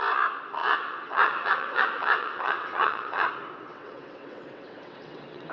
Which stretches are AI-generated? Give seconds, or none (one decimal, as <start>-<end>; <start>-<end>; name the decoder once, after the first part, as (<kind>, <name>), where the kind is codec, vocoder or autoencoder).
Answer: 0.6-3.3 (vocoder, WaveNeXt); 3.7-5.5